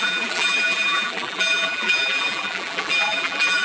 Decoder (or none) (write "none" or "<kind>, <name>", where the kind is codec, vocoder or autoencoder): vocoder, BigVGAN v2